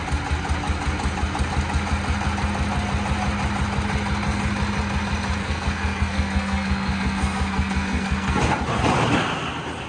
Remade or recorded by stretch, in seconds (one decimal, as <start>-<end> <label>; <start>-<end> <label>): 0.0-5.4 recorded; 5.4-8.4 remade; 8.4-9.9 recorded